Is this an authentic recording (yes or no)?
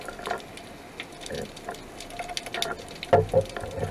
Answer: yes